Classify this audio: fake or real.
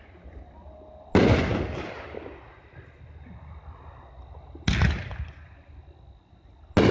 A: real